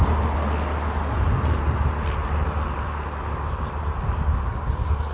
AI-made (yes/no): no